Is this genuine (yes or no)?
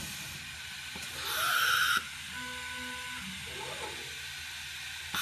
yes